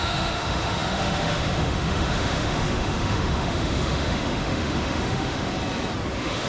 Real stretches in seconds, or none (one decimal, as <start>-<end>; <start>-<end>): 5.5-6.1